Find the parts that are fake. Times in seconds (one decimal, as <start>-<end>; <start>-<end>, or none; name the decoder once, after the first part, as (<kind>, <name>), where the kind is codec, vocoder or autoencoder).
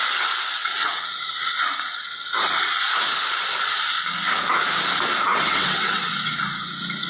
0.6-1.2 (vocoder, WaveNeXt); 5.3-6.4